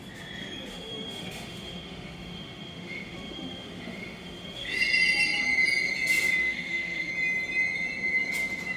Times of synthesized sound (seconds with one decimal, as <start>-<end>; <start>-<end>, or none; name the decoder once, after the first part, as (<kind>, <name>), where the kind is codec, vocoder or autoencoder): 0.7-4.8 (autoencoder, DAC-VAE); 6.4-7.1